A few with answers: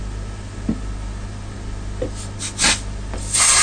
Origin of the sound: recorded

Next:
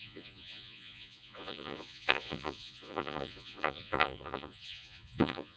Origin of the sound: remade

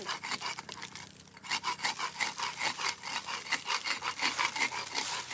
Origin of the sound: recorded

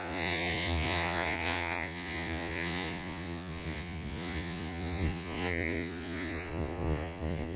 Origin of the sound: remade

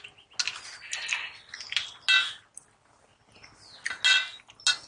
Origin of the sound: recorded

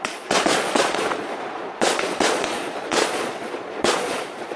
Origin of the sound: remade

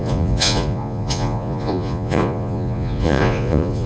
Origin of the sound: remade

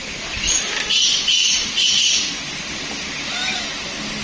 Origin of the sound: recorded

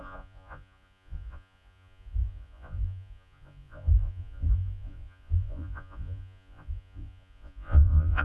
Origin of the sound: remade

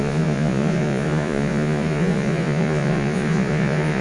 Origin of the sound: remade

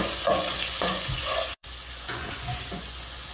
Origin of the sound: remade